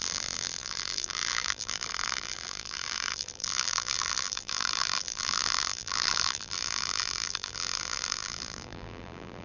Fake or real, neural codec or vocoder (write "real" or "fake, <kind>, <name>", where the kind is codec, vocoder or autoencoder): fake, vocoder, BigVGAN v2